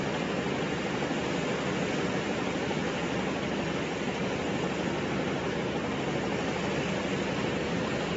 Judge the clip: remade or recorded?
recorded